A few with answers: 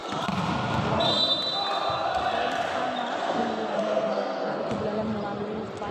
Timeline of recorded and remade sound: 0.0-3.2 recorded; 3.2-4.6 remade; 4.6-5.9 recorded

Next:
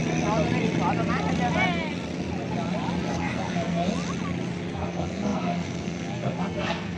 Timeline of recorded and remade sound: 0.0-3.1 recorded; 3.1-3.9 remade; 3.9-4.7 recorded; 4.7-7.0 remade

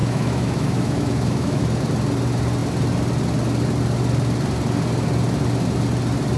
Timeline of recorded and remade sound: 0.0-1.6 remade; 1.6-6.4 recorded